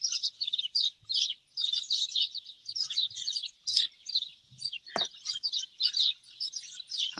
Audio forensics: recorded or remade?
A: recorded